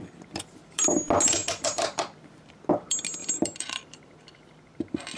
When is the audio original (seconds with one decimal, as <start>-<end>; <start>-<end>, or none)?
0.0-1.4; 2.7-3.2; 4.8-5.2